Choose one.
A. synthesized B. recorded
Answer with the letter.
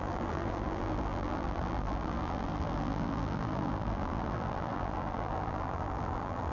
A